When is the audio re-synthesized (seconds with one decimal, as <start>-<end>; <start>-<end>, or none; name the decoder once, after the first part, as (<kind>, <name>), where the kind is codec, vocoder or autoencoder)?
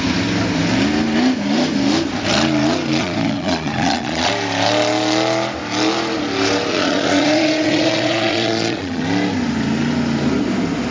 3.0-4.3 (vocoder, Vocos); 6.7-9.0